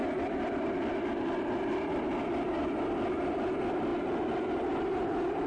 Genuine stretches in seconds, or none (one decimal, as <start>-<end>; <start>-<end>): 0.0-5.5